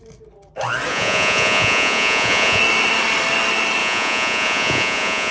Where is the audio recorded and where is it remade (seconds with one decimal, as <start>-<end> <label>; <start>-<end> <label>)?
0.0-0.9 recorded; 0.9-2.6 remade; 2.6-3.8 recorded; 3.8-5.3 remade